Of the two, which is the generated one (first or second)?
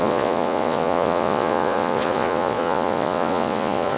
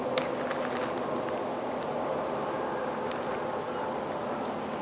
first